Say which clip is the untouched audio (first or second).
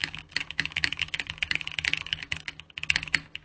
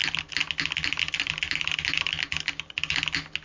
second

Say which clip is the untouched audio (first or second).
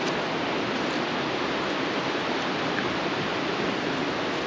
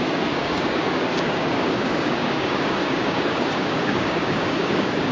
first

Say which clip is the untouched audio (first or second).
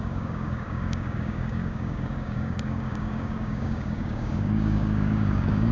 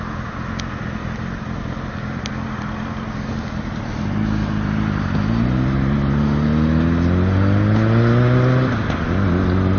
second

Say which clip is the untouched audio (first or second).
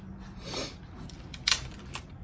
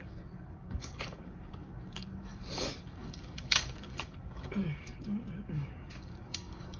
first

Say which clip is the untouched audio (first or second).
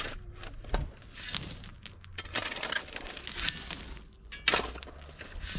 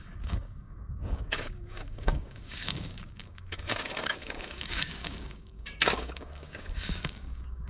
first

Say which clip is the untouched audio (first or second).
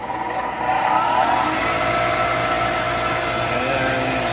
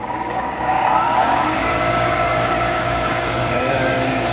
first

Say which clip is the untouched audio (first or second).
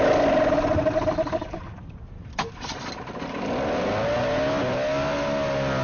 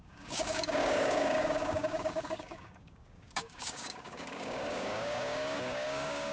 first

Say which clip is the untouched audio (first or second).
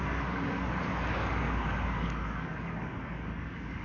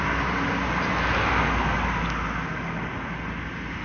second